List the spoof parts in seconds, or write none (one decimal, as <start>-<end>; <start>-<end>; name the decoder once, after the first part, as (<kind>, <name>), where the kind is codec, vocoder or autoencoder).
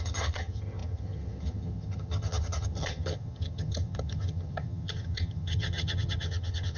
0.0-6.8 (vocoder, HiFi-GAN)